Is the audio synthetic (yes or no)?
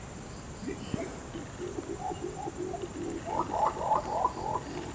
no